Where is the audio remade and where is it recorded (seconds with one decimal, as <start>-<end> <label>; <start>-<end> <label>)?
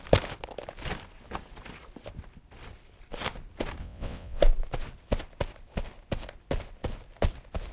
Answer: 0.0-3.8 recorded; 3.8-4.4 remade; 4.4-7.7 recorded